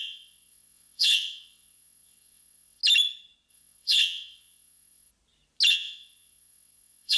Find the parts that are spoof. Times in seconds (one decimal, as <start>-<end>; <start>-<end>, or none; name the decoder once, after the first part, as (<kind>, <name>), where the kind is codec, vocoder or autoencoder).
0.0-2.8 (vocoder, WaveNeXt); 3.5-5.1; 5.7-7.2